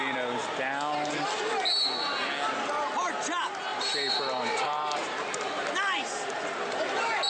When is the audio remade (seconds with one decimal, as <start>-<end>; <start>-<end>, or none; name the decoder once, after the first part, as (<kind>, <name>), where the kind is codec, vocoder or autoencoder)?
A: 3.7-5.7 (vocoder, BigVGAN v2)